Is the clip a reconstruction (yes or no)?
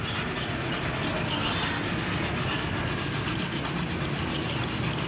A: no